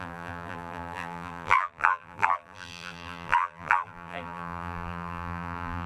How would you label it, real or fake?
fake